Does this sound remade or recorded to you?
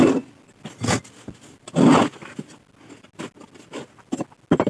recorded